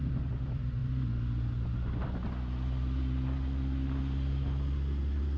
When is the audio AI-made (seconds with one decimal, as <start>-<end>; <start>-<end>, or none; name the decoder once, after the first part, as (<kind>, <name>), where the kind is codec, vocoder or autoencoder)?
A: none